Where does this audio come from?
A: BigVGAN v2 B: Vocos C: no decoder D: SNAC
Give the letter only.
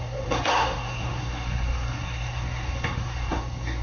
D